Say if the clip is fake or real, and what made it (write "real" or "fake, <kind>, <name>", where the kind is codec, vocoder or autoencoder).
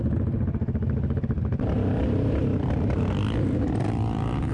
real